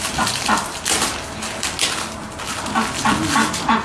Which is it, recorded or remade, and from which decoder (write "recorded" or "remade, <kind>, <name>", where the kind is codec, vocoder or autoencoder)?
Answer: recorded